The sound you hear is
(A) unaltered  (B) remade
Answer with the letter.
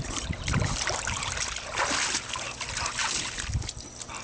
A